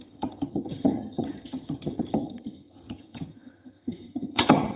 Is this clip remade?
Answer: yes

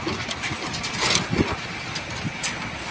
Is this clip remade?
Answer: no